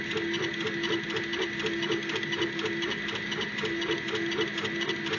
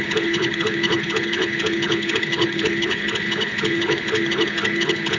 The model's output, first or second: second